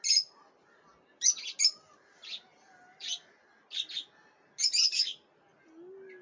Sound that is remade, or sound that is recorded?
recorded